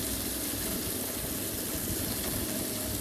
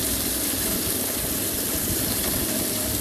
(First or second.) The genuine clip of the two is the first